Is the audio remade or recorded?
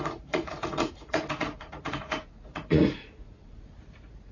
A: remade